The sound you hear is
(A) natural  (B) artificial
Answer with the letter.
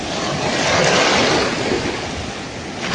A